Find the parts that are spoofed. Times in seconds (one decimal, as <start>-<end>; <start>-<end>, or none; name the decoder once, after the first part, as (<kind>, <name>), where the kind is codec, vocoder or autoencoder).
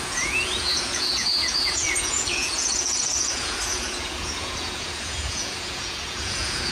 0.0-6.7 (vocoder, Vocos)